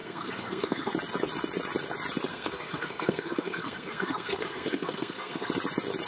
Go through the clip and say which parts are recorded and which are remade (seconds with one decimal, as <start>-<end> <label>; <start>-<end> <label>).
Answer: 0.0-0.9 remade; 0.9-2.3 recorded; 2.3-5.5 remade; 5.5-6.1 recorded